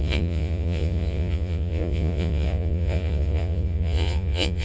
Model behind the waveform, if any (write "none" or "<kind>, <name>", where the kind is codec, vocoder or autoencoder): vocoder, Vocos